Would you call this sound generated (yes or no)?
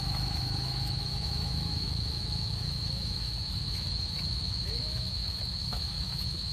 yes